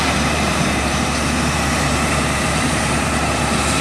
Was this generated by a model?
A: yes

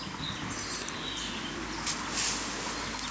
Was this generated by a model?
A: no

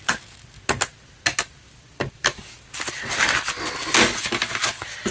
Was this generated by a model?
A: no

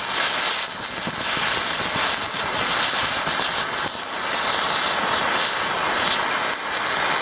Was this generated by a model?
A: no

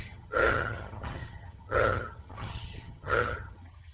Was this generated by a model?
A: yes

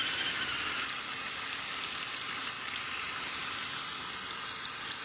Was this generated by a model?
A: no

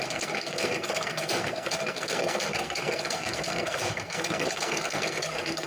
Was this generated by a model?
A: yes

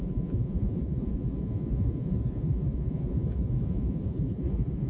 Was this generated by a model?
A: yes